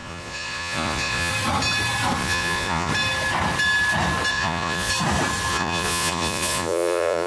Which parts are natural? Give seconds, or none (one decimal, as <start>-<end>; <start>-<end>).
1.3-2.2; 2.9-4.3; 4.9-5.5